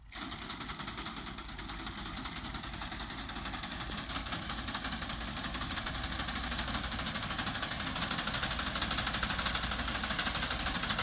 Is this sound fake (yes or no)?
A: no